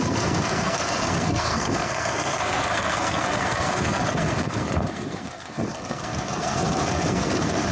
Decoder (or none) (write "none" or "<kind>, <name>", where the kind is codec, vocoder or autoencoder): codec, SNAC